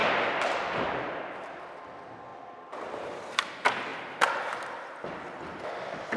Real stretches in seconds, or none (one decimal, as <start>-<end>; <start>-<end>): 0.0-6.2